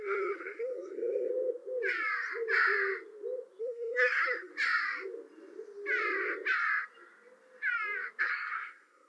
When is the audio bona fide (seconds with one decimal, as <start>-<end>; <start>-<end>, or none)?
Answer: 1.3-3.6; 4.5-8.2